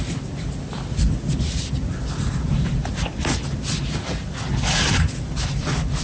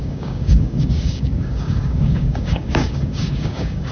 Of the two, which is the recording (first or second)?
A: first